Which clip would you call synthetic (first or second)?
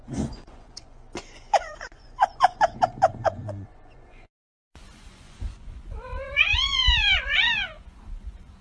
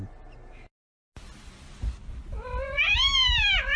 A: first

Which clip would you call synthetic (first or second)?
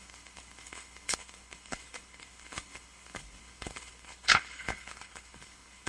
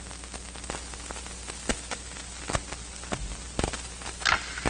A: first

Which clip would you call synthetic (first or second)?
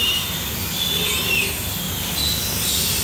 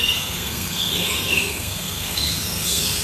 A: second